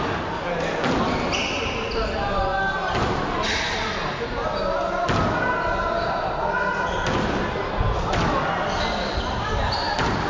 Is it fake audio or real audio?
real